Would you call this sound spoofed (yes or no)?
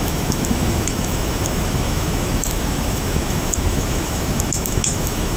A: yes